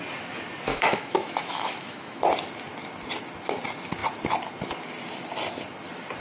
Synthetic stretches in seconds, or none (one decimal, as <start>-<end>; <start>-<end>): 0.7-2.2